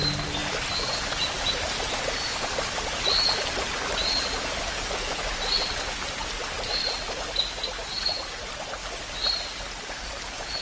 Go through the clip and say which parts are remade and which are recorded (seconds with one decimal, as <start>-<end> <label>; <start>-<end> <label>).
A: 0.0-10.6 recorded